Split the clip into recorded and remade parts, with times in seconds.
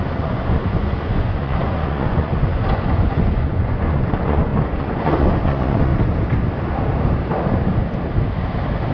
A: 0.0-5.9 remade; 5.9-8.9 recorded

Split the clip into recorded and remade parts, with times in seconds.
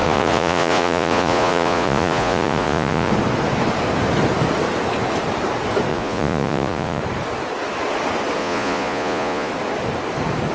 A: 0.0-3.1 remade; 3.1-5.9 recorded; 5.9-7.0 remade; 7.0-8.4 recorded; 8.4-9.5 remade; 9.5-10.5 recorded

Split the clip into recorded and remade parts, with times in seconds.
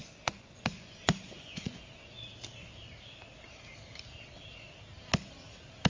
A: 0.0-1.8 remade; 1.8-5.9 recorded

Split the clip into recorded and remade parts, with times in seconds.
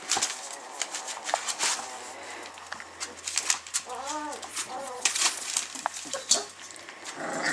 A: 0.0-4.5 recorded; 4.5-5.5 remade; 5.5-7.5 recorded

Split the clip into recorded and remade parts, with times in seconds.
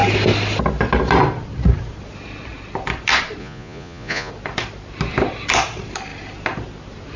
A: 0.0-3.4 recorded; 3.4-4.3 remade; 4.3-7.2 recorded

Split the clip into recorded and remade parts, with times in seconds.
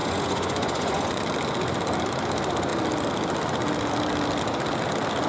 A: 0.0-1.2 remade; 1.2-5.3 recorded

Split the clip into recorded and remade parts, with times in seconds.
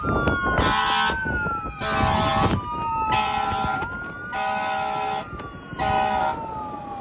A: 0.0-7.0 recorded